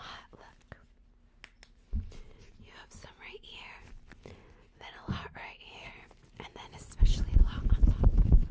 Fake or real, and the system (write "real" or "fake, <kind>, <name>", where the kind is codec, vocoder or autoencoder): real